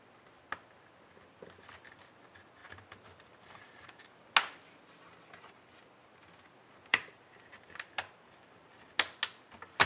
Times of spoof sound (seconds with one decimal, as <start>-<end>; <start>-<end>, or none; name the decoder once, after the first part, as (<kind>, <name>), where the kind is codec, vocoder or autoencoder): 2.6-4.0 (vocoder, BigVGAN v2); 6.9-8.7